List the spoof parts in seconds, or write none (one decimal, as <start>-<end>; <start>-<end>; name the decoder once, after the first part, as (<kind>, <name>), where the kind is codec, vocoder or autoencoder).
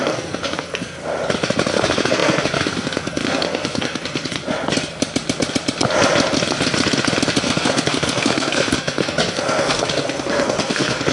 0.0-1.0 (codec, SNAC); 1.7-4.4; 7.4-11.1